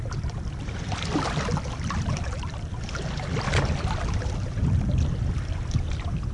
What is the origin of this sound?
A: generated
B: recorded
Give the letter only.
B